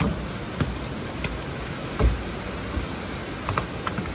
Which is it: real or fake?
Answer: real